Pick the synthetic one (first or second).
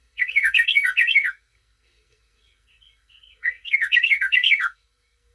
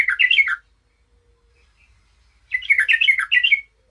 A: first